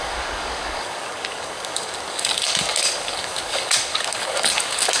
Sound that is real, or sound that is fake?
fake